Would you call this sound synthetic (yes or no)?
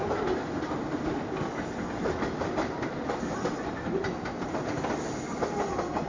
no